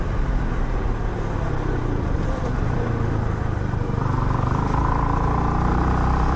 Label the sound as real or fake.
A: real